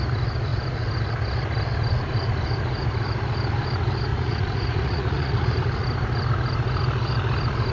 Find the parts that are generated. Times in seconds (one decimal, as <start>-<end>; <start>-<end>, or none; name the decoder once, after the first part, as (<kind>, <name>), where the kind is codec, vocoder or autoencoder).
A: 4.1-5.6 (vocoder, Vocos)